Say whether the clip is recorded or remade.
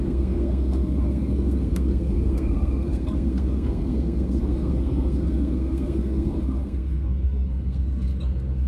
remade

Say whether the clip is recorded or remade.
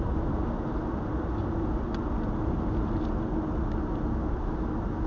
recorded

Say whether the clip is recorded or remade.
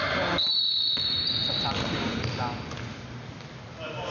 recorded